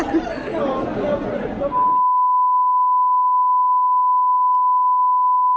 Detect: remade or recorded recorded